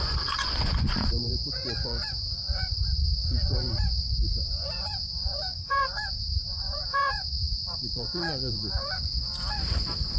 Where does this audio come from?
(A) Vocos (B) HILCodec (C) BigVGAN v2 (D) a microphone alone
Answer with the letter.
A